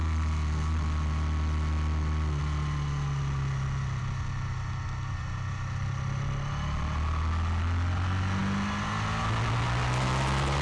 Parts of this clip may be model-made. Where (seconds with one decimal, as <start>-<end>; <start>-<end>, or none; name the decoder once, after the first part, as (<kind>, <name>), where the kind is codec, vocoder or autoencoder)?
none